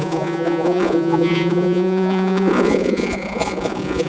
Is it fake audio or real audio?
fake